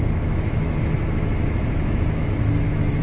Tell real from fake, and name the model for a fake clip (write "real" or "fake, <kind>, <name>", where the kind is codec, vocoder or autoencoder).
fake, autoencoder, DAC-VAE